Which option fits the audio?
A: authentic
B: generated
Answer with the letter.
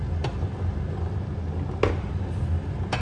A